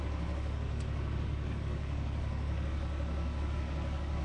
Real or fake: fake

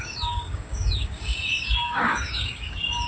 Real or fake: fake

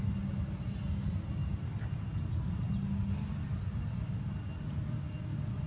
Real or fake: real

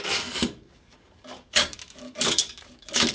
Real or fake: fake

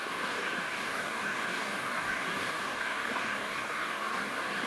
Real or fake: fake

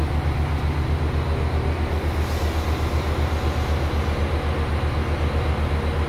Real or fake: real